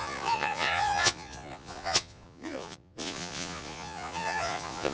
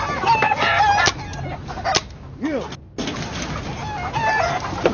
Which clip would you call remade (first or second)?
first